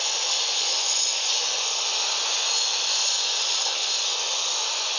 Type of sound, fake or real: fake